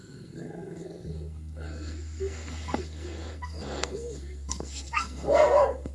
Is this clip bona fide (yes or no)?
no